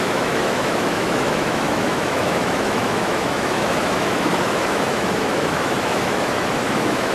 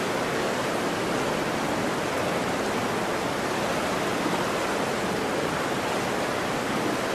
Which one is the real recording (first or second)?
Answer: second